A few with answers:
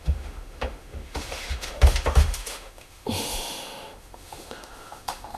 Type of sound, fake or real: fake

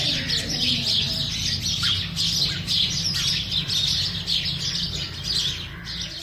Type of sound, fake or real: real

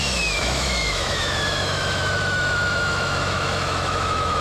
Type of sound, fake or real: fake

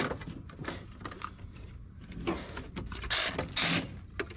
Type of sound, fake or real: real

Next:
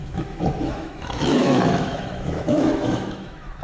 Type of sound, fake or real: fake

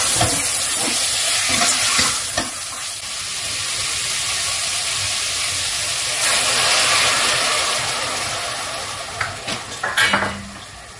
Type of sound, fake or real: real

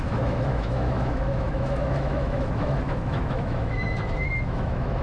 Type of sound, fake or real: fake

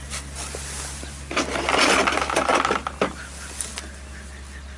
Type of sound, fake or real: real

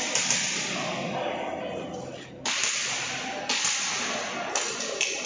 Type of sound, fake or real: real